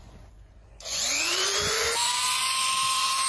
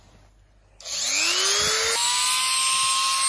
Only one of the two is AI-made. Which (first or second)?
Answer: first